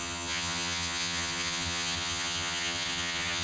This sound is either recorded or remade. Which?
remade